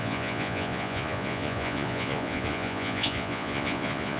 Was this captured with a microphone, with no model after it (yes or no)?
no